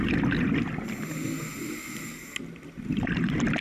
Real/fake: real